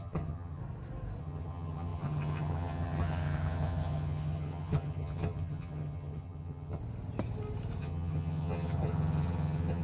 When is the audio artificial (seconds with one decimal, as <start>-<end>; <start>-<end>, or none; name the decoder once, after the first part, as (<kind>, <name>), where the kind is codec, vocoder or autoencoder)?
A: 0.0-0.6 (vocoder, HiFi-GAN); 1.2-6.8; 7.8-9.8